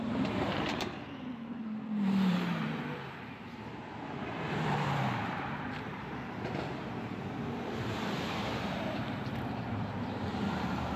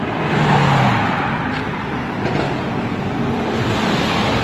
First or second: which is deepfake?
first